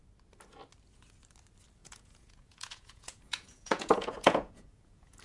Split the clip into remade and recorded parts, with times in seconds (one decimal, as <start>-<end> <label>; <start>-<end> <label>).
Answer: 0.0-1.8 recorded; 1.8-5.2 remade